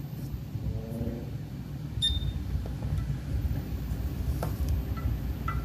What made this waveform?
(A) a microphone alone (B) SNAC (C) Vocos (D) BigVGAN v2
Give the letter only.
A